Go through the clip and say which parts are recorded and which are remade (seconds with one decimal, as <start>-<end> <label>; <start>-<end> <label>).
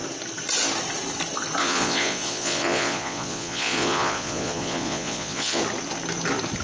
0.0-1.6 recorded; 1.6-5.6 remade; 5.6-6.6 recorded